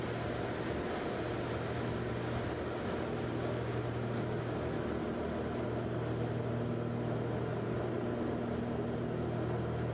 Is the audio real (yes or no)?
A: yes